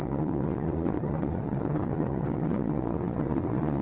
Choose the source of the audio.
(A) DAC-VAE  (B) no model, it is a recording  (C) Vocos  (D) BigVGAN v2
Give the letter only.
C